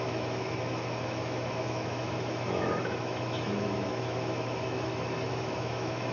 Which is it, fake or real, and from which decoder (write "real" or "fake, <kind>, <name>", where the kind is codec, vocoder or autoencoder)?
fake, autoencoder, DAC-VAE